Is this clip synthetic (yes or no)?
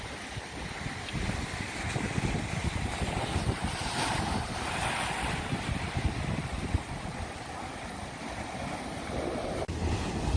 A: no